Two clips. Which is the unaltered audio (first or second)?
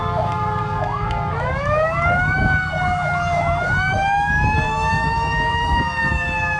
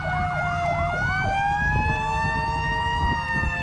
second